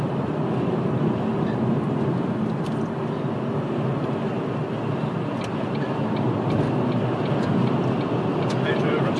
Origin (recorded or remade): recorded